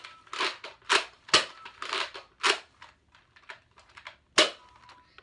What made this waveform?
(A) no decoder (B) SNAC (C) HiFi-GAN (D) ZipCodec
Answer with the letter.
A